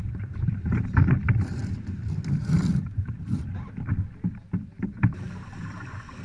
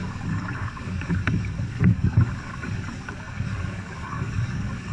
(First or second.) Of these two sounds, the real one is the first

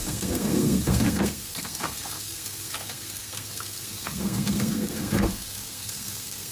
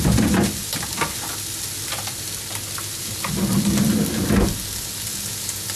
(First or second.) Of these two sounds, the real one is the second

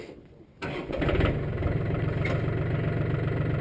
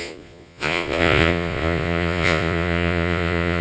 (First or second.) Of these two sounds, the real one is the first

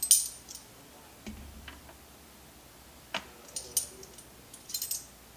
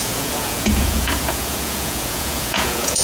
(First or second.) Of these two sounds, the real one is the first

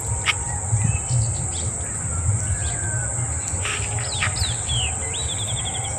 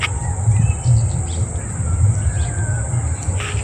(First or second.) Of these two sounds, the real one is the first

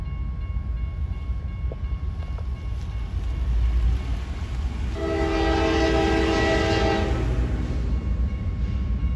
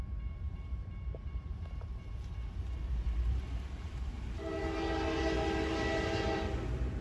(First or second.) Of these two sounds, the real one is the first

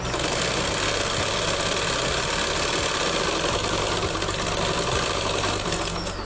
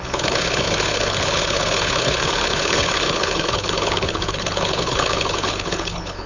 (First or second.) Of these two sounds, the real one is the first